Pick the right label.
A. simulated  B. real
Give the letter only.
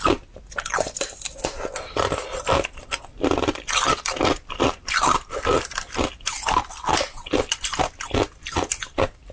B